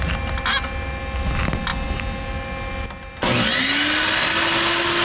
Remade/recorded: recorded